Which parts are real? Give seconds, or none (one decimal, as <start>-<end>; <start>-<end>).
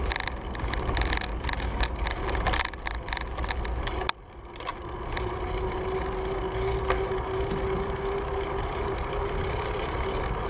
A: 0.0-10.5